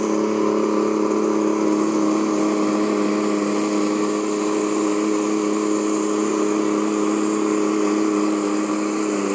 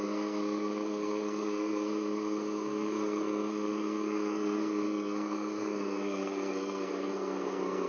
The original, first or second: first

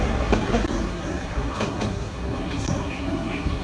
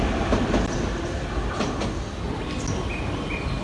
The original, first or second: second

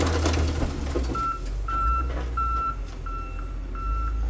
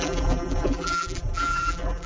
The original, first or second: first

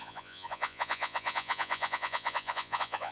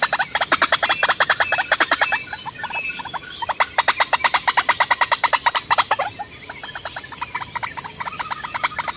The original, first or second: second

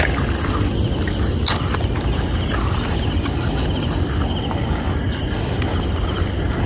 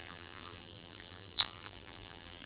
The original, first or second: first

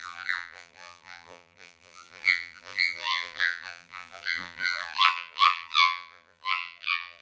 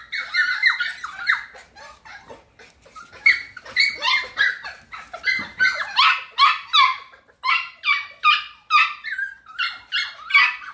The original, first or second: second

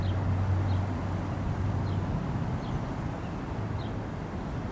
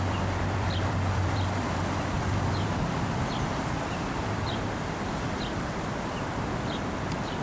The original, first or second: first